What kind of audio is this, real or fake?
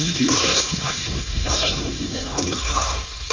fake